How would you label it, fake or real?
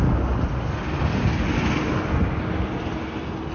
real